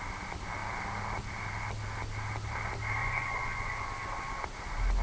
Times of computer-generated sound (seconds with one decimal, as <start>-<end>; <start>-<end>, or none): 3.0-3.9